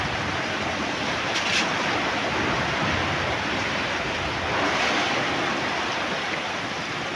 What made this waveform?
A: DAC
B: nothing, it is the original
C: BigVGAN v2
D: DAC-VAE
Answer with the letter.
B